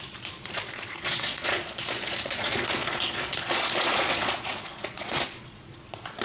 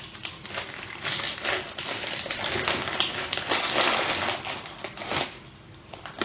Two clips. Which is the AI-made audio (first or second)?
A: first